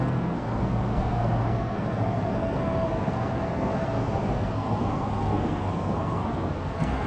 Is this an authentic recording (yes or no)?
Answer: no